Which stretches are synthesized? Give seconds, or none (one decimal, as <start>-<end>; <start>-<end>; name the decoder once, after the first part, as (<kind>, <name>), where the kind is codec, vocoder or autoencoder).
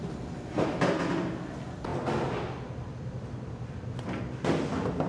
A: none